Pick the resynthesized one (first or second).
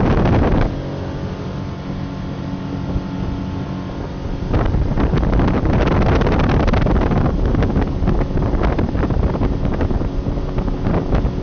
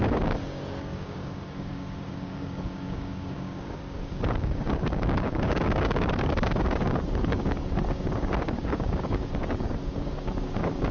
second